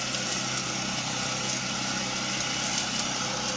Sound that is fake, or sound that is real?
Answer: real